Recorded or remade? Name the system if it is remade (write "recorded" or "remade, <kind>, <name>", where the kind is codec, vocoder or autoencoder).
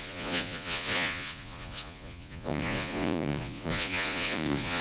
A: remade, vocoder, Vocos